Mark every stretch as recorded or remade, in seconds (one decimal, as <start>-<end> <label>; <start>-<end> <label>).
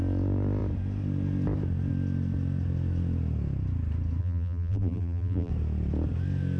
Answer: 0.0-4.2 recorded; 4.2-5.5 remade; 5.5-6.6 recorded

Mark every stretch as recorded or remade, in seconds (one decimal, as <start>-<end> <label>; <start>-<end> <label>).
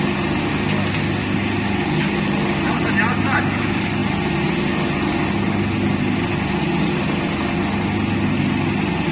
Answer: 0.0-9.1 recorded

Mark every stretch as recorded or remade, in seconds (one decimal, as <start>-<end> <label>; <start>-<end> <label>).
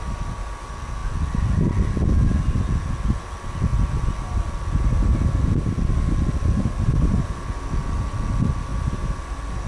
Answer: 0.0-9.7 recorded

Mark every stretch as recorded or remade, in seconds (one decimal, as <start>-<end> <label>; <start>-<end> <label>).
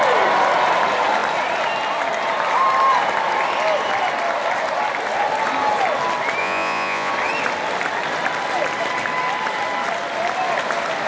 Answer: 0.0-6.4 recorded; 6.4-7.1 remade; 7.1-11.1 recorded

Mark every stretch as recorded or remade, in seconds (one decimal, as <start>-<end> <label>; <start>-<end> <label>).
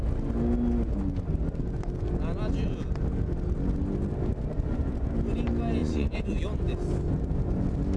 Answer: 0.0-4.3 recorded; 4.3-5.1 remade; 5.1-5.8 recorded; 5.8-6.4 remade; 6.4-8.0 recorded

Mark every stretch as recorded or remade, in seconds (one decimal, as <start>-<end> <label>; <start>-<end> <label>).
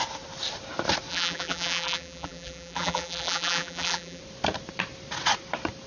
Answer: 0.0-1.1 recorded; 1.1-4.2 remade; 4.2-5.9 recorded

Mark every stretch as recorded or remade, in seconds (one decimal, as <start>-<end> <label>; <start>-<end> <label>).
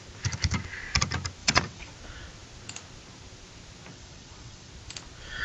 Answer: 0.0-1.4 recorded; 1.4-1.9 remade; 1.9-3.9 recorded; 3.9-4.7 remade; 4.7-5.4 recorded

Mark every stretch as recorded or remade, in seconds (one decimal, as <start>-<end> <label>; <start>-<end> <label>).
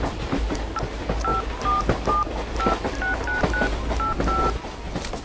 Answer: 0.0-5.2 recorded